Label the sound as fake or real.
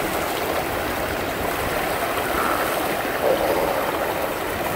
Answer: real